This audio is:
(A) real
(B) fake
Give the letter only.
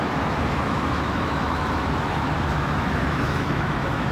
B